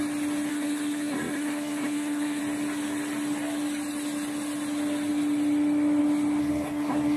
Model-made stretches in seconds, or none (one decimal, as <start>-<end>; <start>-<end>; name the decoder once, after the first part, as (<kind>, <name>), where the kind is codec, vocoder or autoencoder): 0.5-2.4 (codec, SNAC); 6.4-7.2

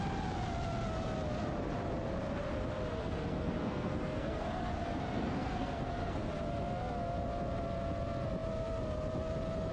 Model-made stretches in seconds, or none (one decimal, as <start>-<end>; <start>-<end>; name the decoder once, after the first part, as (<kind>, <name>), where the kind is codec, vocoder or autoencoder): 3.0-6.3 (codec, SNAC)

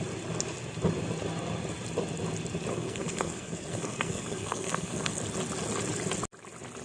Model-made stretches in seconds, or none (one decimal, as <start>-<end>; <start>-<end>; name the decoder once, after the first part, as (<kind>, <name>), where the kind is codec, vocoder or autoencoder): 2.7-5.2 (codec, SNAC)